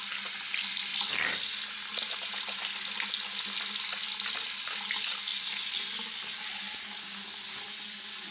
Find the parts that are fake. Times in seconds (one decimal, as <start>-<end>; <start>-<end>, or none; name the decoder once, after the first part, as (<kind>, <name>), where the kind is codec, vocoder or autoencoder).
none